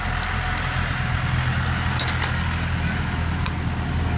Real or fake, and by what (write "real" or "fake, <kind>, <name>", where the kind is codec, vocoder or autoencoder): real